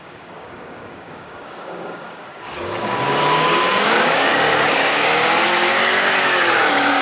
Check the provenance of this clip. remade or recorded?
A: remade